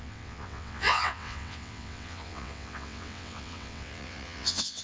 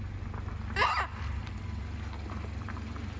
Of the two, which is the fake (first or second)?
first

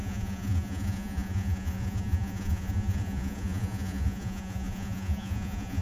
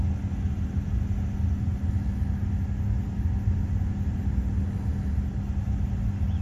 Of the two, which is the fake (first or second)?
first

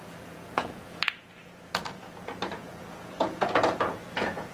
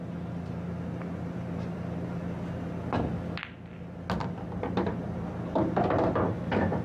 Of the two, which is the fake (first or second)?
first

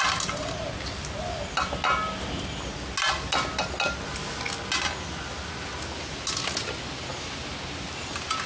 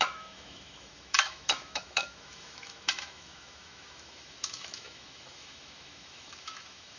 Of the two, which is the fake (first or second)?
second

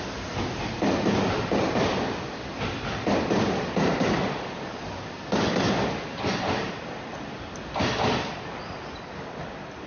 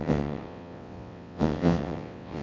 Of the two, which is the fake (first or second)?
second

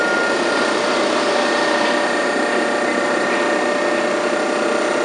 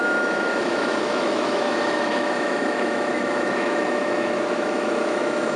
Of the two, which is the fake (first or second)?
second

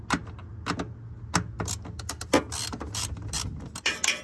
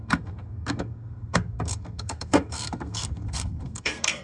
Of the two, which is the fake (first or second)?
second